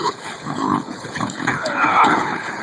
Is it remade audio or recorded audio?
remade